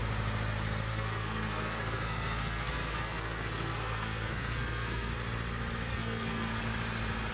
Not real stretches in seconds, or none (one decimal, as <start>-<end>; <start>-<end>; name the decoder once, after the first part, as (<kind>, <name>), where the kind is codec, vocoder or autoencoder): 0.9-5.1 (codec, SNAC); 5.9-6.6